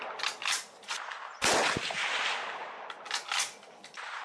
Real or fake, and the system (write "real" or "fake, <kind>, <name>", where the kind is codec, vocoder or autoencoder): real